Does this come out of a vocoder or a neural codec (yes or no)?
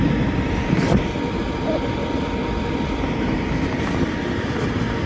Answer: no